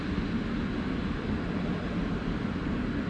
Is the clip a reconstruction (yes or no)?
no